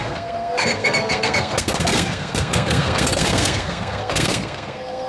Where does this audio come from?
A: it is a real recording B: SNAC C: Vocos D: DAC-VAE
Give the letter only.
B